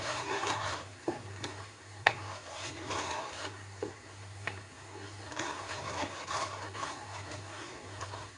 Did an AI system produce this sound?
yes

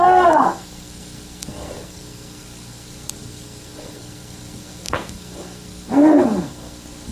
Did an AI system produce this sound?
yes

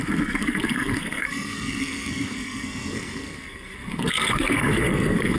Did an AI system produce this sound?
yes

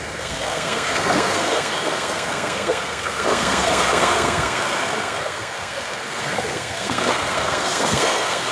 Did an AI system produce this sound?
yes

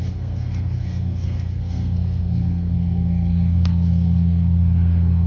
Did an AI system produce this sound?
yes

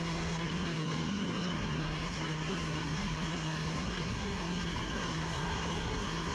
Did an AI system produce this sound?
yes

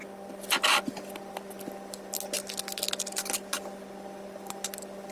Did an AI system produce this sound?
no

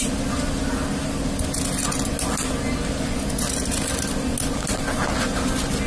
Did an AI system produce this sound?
no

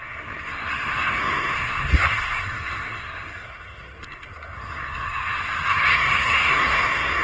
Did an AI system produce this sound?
yes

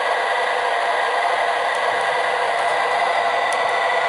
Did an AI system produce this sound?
no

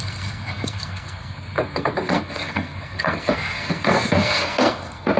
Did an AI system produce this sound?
yes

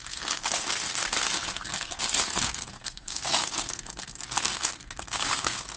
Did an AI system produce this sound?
yes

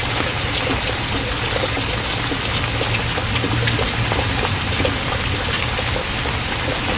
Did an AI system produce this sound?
no